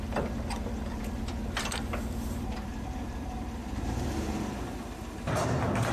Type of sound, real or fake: fake